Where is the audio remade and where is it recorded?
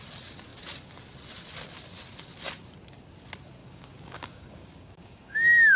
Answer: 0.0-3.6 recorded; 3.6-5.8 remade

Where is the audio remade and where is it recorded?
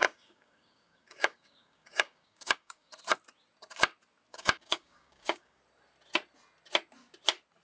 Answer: 0.0-2.9 remade; 2.9-4.3 recorded; 4.3-5.6 remade; 5.6-7.6 recorded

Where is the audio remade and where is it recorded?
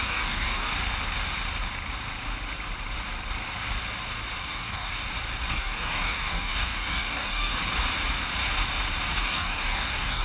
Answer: 0.0-0.7 remade; 0.7-4.4 recorded; 4.4-4.9 remade; 4.9-5.5 recorded; 5.5-7.6 remade; 7.6-9.1 recorded; 9.1-10.2 remade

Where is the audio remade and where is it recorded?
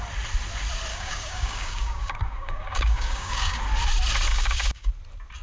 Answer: 0.0-0.9 recorded; 0.9-3.6 remade; 3.6-4.3 recorded; 4.3-4.9 remade; 4.9-5.4 recorded